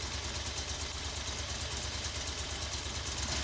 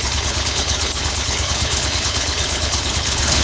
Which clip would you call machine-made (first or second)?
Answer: second